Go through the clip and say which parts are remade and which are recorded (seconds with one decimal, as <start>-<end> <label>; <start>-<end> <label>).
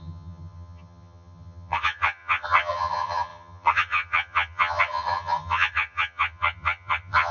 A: 0.0-7.3 remade